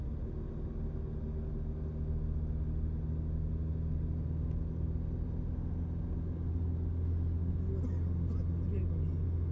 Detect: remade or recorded recorded